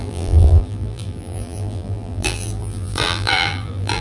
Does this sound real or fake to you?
fake